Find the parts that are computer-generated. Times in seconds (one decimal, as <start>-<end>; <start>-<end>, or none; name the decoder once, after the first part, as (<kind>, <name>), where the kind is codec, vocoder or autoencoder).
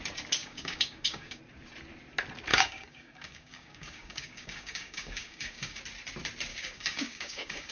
0.4-1.4 (codec, DAC); 2.5-5.8; 6.5-7.7